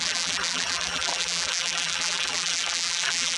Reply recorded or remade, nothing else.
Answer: remade